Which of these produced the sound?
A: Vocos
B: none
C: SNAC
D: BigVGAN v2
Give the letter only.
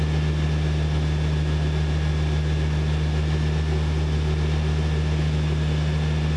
B